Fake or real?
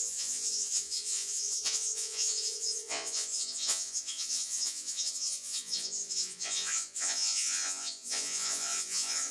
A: fake